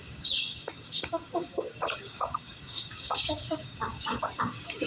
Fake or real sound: fake